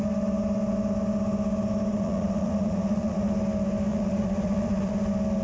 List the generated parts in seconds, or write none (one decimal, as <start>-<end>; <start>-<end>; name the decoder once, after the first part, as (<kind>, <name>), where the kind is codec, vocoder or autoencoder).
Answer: 1.9-3.3 (vocoder, Vocos); 3.9-4.9